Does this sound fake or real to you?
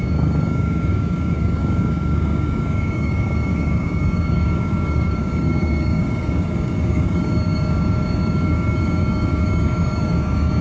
fake